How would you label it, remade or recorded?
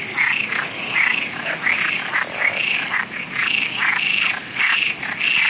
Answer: recorded